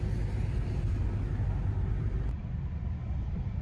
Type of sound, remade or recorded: recorded